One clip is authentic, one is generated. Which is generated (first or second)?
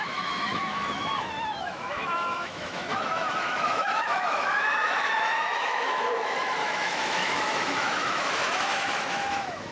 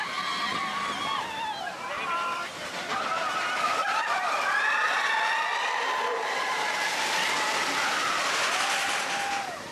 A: first